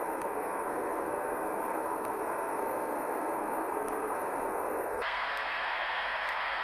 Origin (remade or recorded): remade